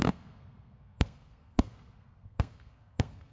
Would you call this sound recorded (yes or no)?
no